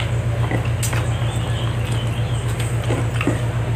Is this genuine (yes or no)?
yes